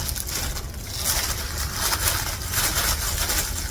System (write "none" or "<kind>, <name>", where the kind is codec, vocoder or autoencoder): none